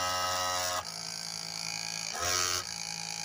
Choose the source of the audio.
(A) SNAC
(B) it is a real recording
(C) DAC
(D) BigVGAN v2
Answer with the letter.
B